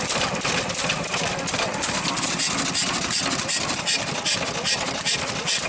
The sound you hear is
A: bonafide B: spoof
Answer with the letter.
A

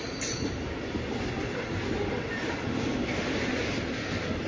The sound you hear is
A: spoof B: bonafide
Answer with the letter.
B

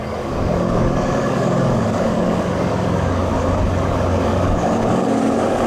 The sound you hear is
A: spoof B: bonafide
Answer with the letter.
A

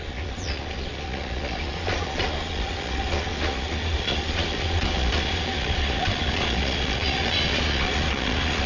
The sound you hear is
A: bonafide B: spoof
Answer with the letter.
B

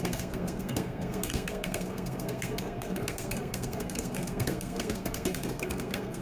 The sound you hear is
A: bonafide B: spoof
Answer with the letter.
B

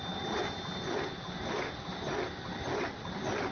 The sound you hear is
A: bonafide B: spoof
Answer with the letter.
A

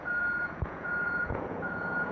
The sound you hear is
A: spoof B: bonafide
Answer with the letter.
A